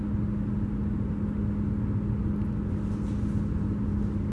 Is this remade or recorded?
recorded